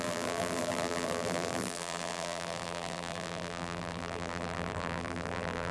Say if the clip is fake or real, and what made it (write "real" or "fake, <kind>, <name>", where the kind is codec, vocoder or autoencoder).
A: fake, vocoder, BigVGAN v2